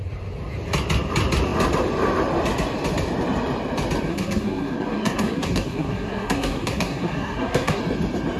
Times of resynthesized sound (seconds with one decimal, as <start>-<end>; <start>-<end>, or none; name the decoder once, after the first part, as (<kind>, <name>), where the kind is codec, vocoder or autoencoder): 4.1-7.8 (codec, SNAC)